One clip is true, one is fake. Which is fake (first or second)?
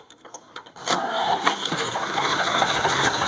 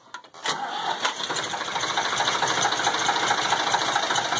first